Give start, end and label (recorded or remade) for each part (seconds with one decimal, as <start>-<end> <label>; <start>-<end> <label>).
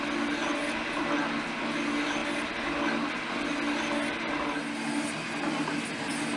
0.0-6.4 recorded